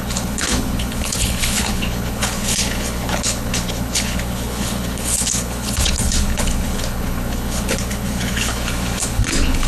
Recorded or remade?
remade